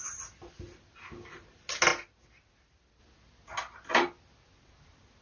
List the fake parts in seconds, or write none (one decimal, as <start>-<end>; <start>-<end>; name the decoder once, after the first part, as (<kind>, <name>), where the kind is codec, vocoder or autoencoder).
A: none